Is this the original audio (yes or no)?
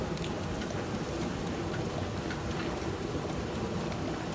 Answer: yes